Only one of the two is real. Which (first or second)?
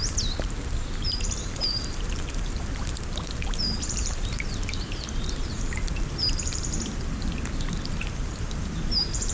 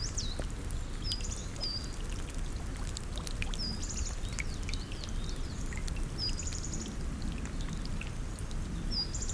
second